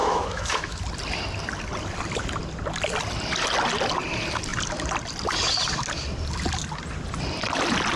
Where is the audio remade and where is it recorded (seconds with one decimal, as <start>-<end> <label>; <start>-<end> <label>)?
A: 0.0-0.8 remade; 0.8-8.0 recorded